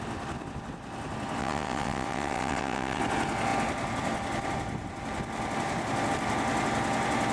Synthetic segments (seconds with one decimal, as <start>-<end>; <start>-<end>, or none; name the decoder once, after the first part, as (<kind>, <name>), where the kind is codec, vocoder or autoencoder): 1.4-3.0 (vocoder, WaveNeXt)